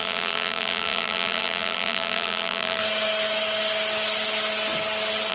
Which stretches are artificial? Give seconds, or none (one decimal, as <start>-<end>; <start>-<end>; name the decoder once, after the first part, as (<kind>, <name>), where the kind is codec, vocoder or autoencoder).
0.0-2.8 (vocoder, BigVGAN v2)